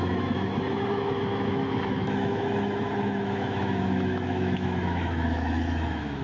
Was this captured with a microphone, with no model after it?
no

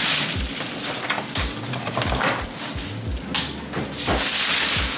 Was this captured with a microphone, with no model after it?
yes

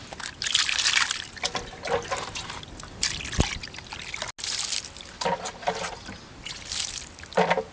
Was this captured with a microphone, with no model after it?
yes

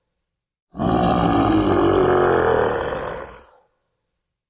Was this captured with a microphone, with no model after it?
yes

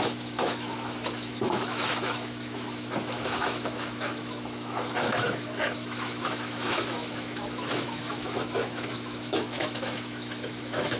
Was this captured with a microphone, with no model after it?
no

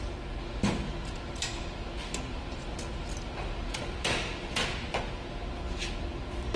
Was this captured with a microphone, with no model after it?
yes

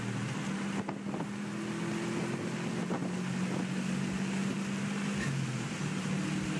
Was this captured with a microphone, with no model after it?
yes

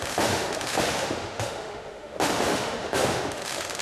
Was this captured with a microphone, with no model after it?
no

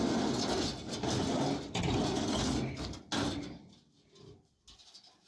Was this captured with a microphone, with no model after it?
yes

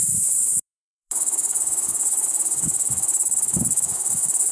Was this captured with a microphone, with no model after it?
no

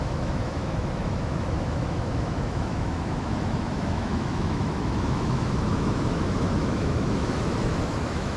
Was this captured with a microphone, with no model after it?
no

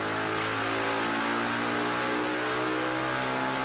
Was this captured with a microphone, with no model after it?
yes